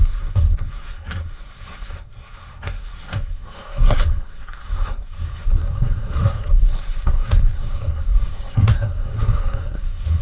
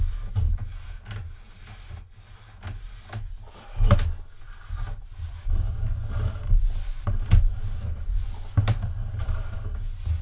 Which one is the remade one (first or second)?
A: first